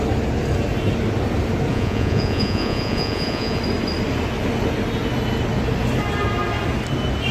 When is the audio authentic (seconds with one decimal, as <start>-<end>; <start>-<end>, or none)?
0.0-1.7; 3.6-7.3